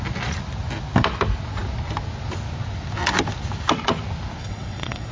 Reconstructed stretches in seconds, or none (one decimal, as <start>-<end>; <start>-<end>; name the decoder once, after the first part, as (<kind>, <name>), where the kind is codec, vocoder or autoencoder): 4.4-5.1 (vocoder, WaveNeXt)